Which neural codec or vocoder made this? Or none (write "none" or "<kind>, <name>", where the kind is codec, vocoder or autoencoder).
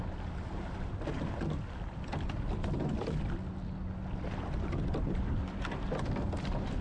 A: none